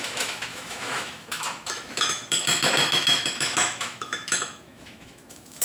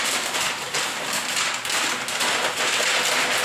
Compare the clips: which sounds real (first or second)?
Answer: second